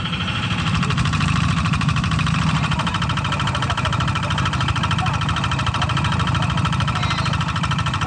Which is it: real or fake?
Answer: fake